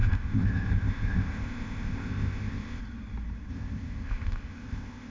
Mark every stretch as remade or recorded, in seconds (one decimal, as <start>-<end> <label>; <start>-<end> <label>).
0.0-2.8 remade; 2.8-3.5 recorded; 3.5-5.1 remade